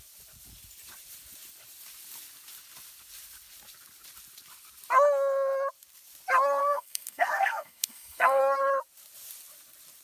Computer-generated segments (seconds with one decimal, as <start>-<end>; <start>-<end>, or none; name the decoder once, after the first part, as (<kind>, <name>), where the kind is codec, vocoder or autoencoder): 6.6-8.4 (codec, SNAC)